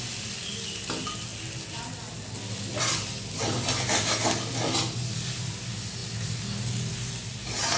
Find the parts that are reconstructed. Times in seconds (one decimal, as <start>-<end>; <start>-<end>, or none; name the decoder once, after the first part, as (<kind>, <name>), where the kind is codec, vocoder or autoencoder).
none